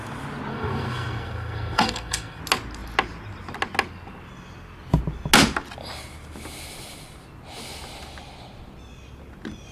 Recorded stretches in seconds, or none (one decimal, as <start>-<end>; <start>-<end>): 0.0-0.5; 2.4-9.7